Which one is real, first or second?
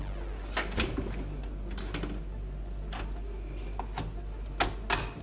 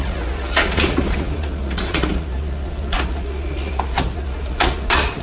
first